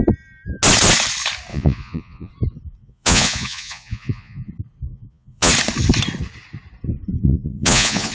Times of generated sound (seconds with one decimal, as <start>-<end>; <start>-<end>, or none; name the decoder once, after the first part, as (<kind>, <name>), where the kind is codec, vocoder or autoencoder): 1.5-2.3 (vocoder, Vocos); 2.8-4.5; 4.9-5.5; 7.2-8.1